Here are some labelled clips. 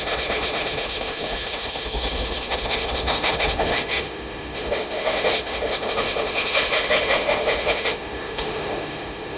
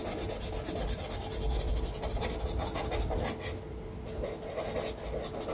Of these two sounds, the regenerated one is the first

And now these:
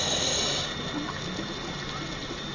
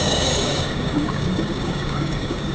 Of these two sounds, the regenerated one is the second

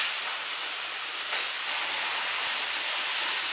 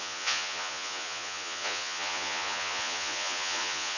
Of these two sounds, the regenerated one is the second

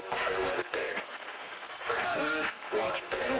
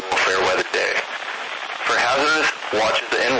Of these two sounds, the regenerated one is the first